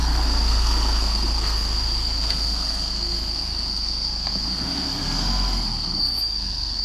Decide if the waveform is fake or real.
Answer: fake